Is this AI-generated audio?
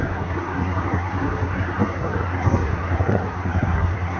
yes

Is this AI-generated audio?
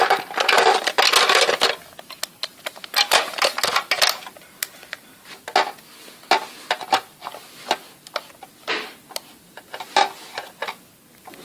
no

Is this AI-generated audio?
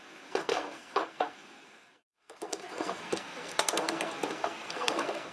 yes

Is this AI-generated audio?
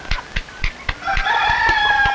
no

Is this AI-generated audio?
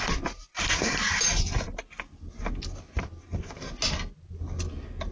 no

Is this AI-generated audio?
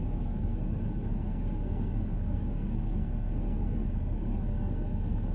yes